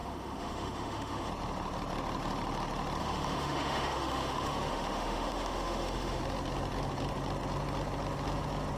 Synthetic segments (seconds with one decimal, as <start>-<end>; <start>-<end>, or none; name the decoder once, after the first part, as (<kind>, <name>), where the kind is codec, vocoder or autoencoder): 0.0-1.3 (autoencoder, DAC-VAE); 3.0-6.2